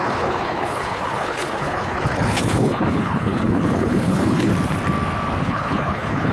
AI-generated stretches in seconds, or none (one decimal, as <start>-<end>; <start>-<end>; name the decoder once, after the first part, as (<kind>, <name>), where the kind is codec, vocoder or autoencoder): 0.0-4.5 (codec, HILCodec); 5.4-6.3